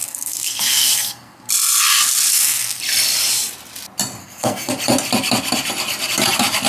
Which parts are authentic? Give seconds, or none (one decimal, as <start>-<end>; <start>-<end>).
1.5-2.3; 2.8-4.2; 4.7-6.7